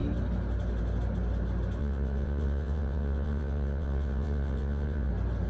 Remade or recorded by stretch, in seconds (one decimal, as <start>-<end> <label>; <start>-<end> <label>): 0.0-1.8 recorded; 1.8-5.1 remade; 5.1-5.5 recorded